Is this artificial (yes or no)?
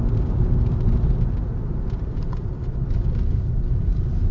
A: no